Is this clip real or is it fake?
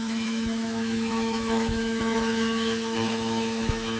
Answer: fake